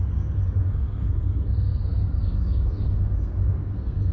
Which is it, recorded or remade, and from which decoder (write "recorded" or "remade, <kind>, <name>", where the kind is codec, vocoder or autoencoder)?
remade, codec, SNAC